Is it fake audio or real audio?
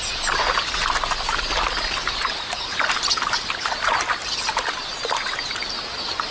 real